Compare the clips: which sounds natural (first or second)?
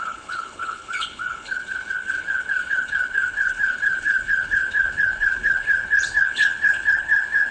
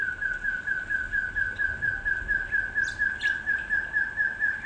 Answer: second